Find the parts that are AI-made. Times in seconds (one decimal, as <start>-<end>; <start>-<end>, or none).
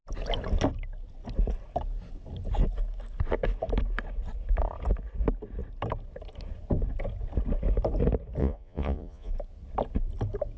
8.4-9.3